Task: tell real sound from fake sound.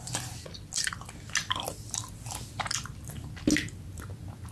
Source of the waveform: real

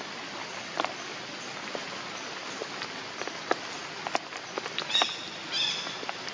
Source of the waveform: real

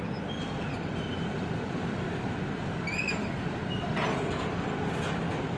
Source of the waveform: real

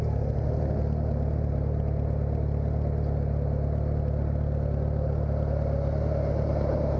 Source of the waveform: real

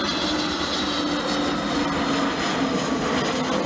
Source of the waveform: real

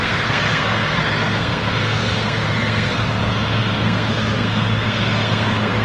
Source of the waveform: fake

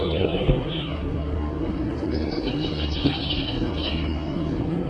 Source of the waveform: fake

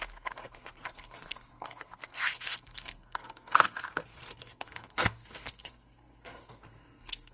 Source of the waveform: fake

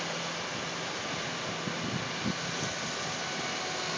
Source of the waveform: real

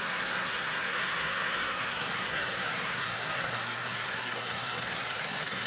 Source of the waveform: fake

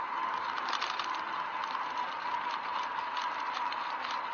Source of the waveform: real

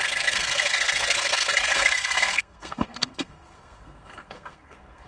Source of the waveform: fake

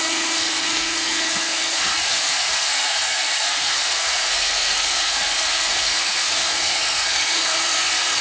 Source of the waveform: fake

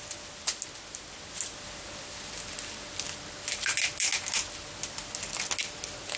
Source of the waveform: real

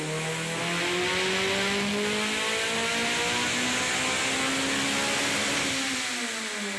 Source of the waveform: real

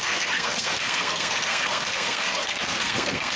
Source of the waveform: fake